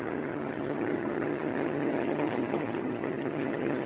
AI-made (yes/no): yes